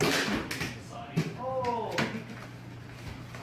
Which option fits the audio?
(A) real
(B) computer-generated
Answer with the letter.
A